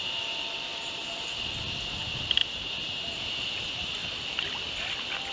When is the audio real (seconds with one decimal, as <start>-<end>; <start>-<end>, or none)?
0.0-0.7; 1.8-2.4; 3.2-4.0